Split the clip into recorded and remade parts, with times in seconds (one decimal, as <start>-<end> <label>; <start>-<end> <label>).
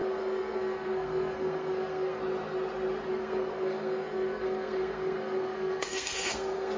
0.0-2.2 remade; 2.2-3.1 recorded; 3.1-6.8 remade